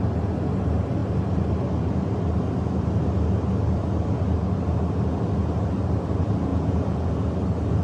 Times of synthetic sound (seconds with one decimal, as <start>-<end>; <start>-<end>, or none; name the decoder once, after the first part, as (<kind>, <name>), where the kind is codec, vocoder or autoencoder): 6.5-7.1 (vocoder, Vocos)